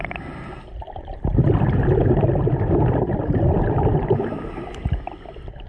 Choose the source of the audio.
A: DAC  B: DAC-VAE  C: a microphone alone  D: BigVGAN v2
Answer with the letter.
C